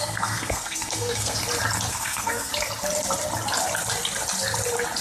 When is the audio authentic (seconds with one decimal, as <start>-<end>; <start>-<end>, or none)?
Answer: 1.4-1.9; 2.5-5.0